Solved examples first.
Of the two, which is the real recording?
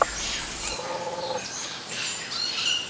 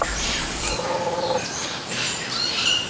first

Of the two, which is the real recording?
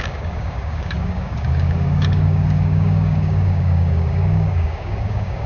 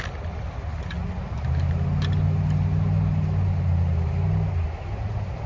second